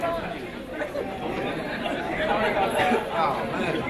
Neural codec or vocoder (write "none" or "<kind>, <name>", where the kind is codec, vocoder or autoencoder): none